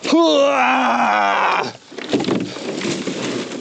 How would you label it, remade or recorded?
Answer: recorded